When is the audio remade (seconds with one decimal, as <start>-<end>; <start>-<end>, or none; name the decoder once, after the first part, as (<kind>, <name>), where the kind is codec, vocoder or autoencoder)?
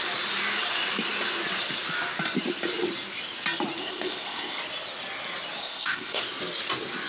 3.8-4.6 (codec, ZipCodec); 5.6-6.2